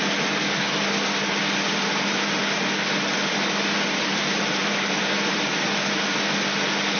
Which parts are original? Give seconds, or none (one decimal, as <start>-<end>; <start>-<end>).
0.0-4.1; 5.5-7.0